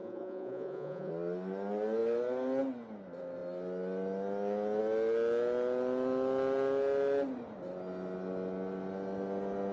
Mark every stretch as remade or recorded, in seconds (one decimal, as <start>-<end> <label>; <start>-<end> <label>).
0.0-1.1 remade; 1.1-9.7 recorded